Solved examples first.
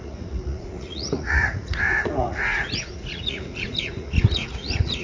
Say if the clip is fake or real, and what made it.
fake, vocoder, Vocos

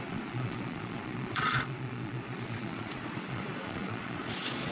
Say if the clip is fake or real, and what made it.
fake, vocoder, Vocos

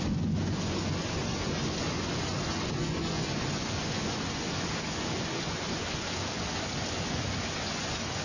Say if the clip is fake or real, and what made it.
fake, vocoder, Vocos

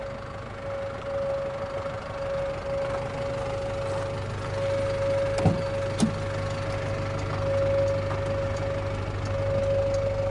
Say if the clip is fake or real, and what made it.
real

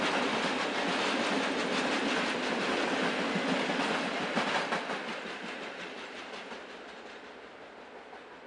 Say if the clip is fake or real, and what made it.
real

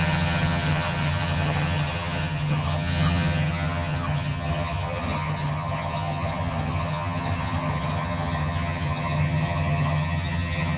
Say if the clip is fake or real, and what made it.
fake, vocoder, HiFi-GAN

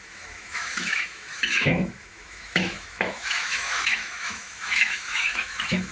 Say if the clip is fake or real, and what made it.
fake, autoencoder, DAC-VAE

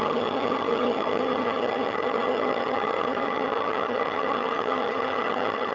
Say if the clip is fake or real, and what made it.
fake, vocoder, HiFi-GAN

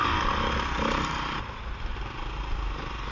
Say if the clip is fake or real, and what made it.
real